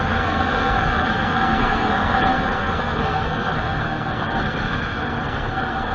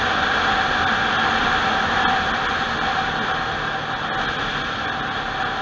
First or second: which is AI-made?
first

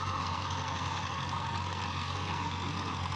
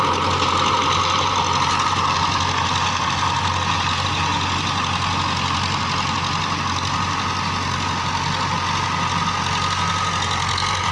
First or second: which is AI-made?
first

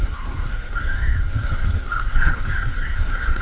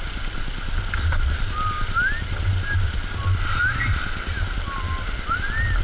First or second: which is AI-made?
first